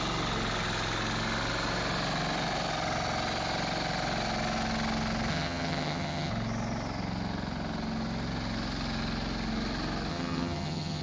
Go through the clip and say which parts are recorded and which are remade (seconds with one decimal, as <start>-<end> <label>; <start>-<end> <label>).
0.0-5.3 recorded; 5.3-6.3 remade; 6.3-10.1 recorded; 10.1-11.0 remade